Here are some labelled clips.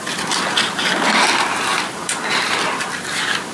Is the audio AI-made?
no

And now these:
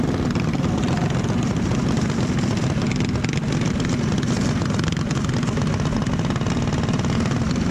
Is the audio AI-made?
no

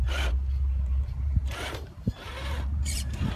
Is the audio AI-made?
yes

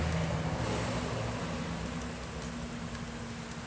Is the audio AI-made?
no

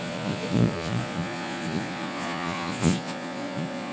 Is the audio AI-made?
yes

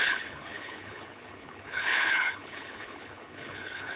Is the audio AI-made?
yes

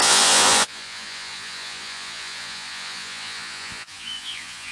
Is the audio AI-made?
yes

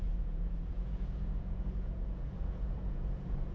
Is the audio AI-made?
yes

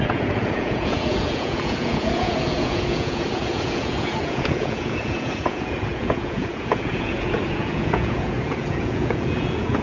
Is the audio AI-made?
yes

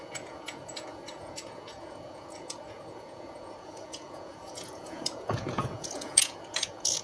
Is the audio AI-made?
yes